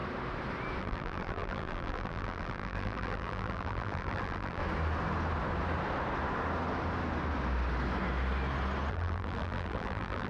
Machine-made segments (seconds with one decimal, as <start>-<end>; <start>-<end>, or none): 0.8-4.6; 8.9-10.3